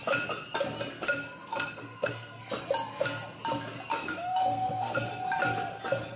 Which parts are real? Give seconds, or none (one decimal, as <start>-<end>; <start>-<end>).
0.0-1.5; 2.4-3.9; 5.1-6.2